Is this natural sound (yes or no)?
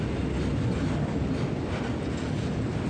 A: yes